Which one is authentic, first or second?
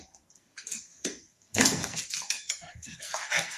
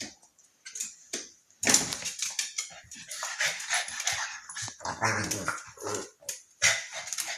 second